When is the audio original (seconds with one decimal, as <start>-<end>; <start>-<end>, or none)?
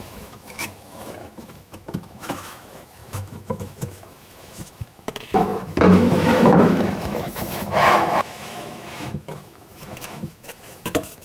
none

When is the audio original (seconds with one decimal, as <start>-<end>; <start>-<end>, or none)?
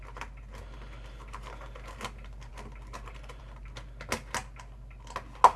0.0-5.6